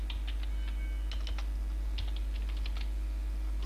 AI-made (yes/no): no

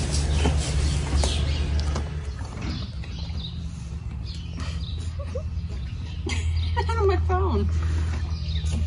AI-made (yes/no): no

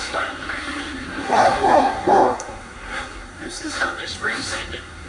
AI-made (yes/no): yes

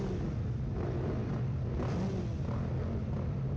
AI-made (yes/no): no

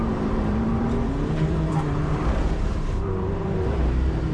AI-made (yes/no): yes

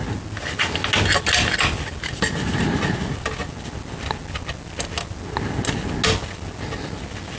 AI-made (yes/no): no